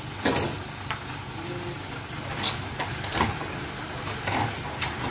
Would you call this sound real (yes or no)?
yes